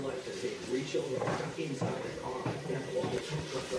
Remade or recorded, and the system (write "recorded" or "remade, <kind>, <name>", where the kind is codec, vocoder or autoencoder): remade, vocoder, BigVGAN v2